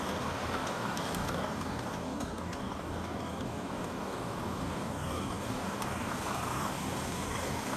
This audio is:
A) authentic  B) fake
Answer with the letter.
B